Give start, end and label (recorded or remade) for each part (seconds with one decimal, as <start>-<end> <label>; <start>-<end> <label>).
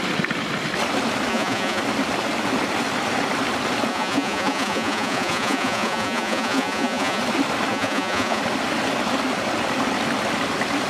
0.0-1.3 recorded; 1.3-1.8 remade; 1.8-3.9 recorded; 3.9-7.2 remade; 7.2-7.7 recorded; 7.7-8.4 remade; 8.4-10.9 recorded